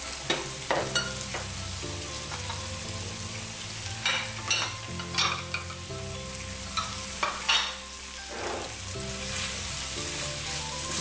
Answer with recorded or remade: recorded